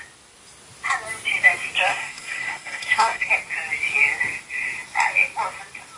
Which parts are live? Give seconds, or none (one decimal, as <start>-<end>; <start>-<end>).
0.0-1.9; 3.3-6.0